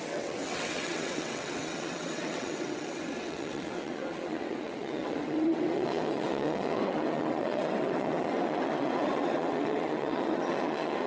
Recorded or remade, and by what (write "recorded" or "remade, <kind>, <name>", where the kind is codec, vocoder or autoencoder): remade, vocoder, WaveNeXt